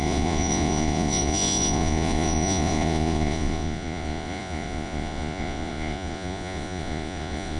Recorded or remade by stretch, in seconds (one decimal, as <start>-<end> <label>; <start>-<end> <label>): 0.0-7.6 remade